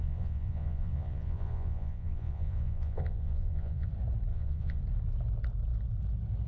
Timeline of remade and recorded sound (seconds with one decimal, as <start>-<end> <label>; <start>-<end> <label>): 0.0-3.9 remade; 3.9-4.3 recorded; 4.3-4.8 remade; 4.8-6.5 recorded